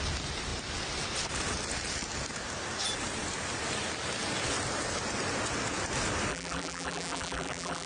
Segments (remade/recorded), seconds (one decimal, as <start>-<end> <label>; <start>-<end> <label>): 0.0-6.3 recorded; 6.3-7.9 remade